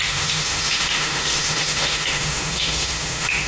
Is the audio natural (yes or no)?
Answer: no